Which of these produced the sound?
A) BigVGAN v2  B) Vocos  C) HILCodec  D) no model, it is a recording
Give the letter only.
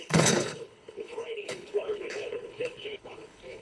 C